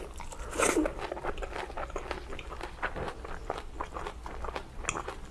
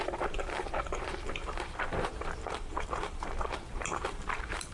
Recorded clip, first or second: first